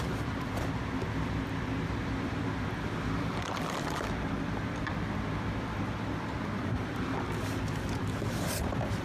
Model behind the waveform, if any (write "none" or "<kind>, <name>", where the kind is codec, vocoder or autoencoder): vocoder, BigVGAN v2